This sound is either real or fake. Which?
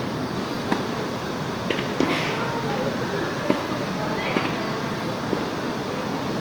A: real